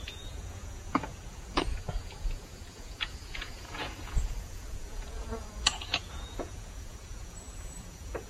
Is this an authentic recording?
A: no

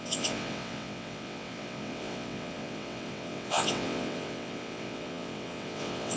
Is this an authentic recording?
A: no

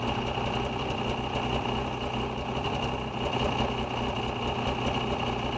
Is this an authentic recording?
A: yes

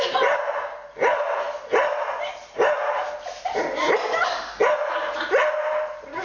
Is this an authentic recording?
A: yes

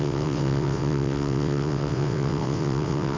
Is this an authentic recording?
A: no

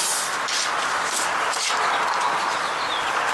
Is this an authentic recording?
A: no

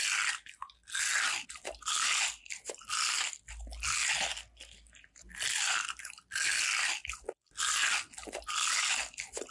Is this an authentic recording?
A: yes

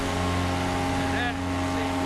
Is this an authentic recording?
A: yes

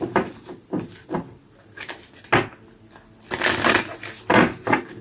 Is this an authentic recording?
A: yes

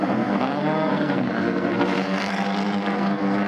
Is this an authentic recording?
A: no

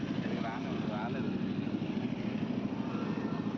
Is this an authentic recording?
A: yes